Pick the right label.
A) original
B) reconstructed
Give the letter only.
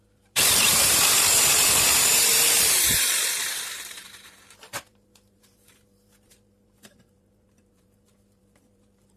B